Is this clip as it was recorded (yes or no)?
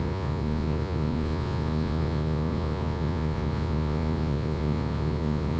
no